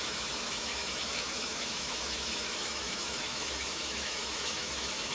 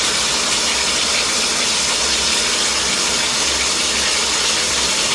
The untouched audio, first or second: second